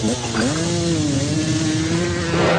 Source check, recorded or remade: recorded